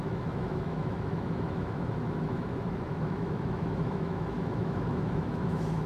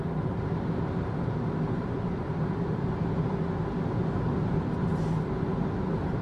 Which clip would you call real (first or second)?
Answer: second